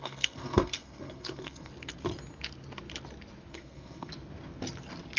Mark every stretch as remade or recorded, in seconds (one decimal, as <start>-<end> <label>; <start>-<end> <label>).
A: 0.0-1.7 remade; 1.7-3.5 recorded; 3.5-4.1 remade; 4.1-5.2 recorded